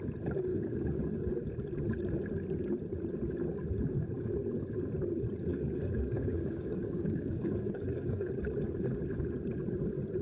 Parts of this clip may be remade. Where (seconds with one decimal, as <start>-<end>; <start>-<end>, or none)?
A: 0.5-1.3; 5.5-8.3